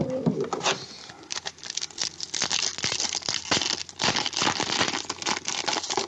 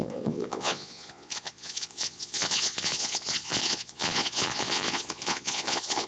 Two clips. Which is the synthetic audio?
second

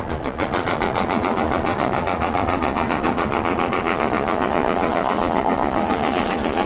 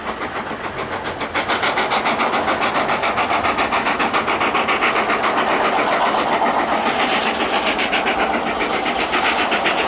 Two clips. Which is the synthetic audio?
first